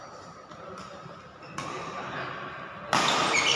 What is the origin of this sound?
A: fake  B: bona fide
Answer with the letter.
B